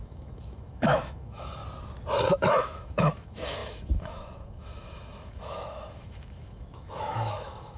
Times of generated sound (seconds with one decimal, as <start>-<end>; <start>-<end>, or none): 0.0-1.6; 2.2-7.8